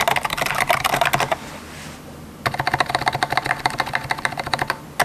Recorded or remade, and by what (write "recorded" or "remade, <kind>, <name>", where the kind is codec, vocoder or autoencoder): recorded